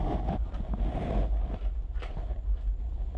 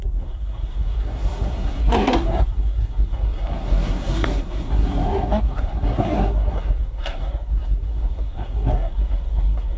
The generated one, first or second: second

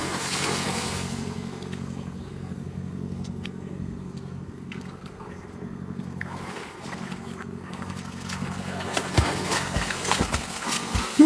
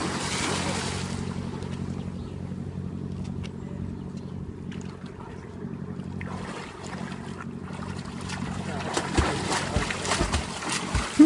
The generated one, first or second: first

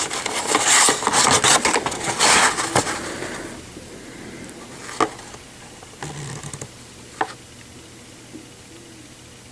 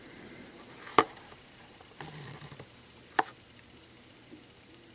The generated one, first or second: second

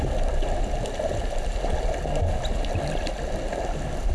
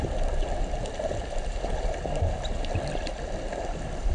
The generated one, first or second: second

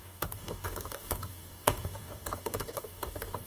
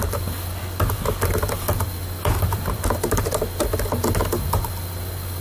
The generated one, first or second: first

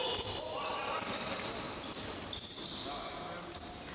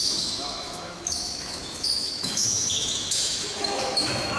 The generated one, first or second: second